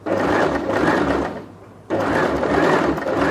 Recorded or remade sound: recorded